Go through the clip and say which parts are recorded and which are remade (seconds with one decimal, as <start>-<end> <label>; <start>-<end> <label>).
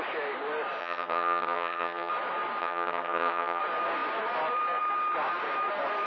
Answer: 0.0-0.8 recorded; 0.8-2.1 remade; 2.1-2.6 recorded; 2.6-3.6 remade; 3.6-6.1 recorded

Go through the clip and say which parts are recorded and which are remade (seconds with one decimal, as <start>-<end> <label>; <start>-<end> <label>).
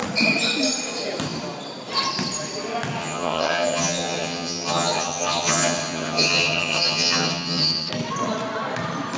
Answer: 0.0-3.0 recorded; 3.0-7.9 remade; 7.9-9.2 recorded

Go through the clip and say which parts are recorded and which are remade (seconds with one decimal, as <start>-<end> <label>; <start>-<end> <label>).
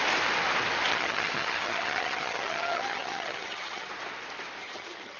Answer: 0.0-0.9 recorded; 0.9-3.9 remade; 3.9-4.6 recorded; 4.6-5.2 remade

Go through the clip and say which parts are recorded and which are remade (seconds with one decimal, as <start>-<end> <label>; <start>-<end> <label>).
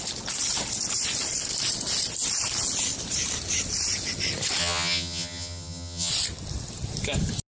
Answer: 0.0-4.6 recorded; 4.6-6.1 remade; 6.1-7.5 recorded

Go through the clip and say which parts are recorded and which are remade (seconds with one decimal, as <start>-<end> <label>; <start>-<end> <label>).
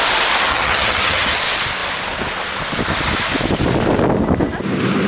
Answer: 0.0-0.5 recorded; 0.5-1.4 remade; 1.4-5.1 recorded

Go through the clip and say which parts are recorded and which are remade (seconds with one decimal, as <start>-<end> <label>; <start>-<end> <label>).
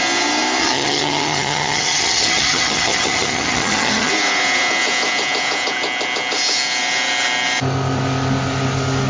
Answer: 0.0-0.6 recorded; 0.6-4.1 remade; 4.1-9.1 recorded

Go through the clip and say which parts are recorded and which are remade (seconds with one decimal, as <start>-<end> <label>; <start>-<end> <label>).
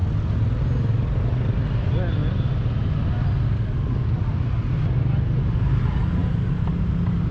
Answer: 0.0-7.3 recorded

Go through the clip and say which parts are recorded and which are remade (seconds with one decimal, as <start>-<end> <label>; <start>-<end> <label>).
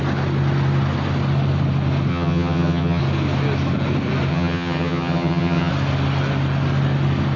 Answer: 0.0-2.1 recorded; 2.1-3.0 remade; 3.0-4.3 recorded; 4.3-5.7 remade; 5.7-7.4 recorded